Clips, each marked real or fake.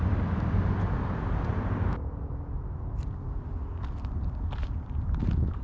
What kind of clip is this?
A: real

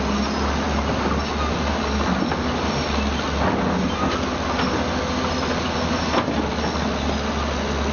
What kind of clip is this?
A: real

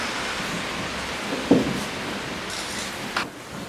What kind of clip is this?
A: real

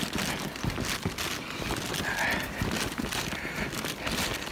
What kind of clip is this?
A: real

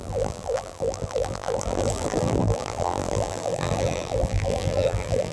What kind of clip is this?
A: fake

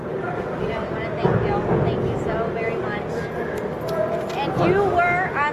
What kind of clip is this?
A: real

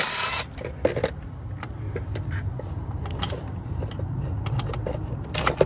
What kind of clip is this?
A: fake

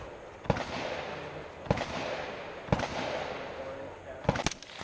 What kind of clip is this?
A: real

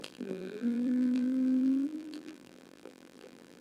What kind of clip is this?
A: fake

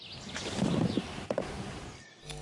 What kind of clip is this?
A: real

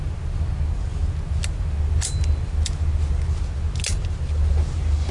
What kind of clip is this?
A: real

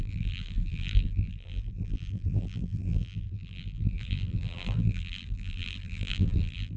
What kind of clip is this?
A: fake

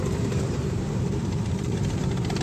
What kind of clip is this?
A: fake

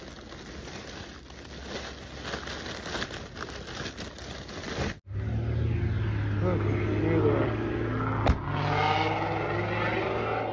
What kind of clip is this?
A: real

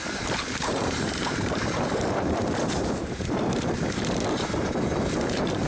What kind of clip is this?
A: fake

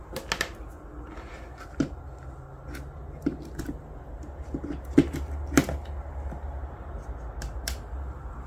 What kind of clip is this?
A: real